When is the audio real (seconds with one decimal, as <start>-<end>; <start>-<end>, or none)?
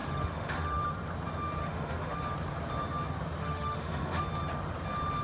0.8-1.6; 2.2-3.4; 4.2-5.2